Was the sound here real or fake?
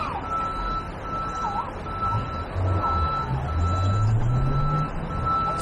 real